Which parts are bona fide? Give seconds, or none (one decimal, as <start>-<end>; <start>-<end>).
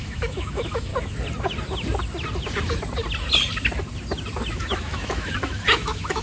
0.9-4.5